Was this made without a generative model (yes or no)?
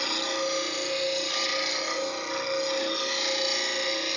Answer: yes